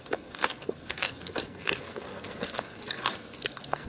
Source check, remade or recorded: remade